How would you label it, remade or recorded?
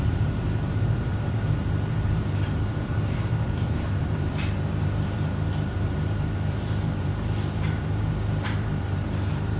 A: remade